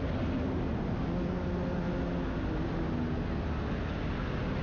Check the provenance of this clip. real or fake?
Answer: real